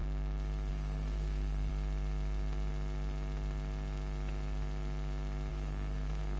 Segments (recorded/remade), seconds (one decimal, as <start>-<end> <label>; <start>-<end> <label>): 0.0-0.7 recorded; 0.7-1.7 remade; 1.7-5.5 recorded; 5.5-6.4 remade